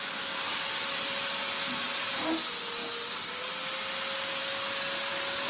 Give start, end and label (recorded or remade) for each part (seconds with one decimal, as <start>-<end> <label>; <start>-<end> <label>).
0.0-5.5 recorded